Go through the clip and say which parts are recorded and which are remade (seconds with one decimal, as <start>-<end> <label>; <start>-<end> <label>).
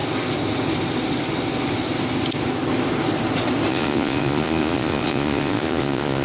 0.0-3.7 recorded; 3.7-6.2 remade